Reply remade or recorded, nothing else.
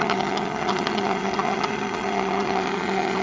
remade